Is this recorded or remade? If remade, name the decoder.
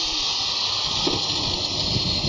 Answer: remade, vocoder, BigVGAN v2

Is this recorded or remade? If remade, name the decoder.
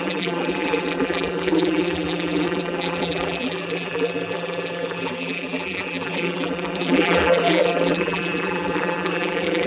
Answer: remade, vocoder, BigVGAN v2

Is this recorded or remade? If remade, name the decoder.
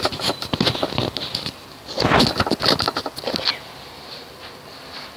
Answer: recorded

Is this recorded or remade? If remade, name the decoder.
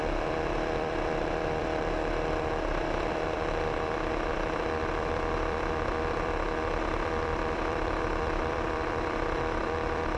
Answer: remade, vocoder, BigVGAN v2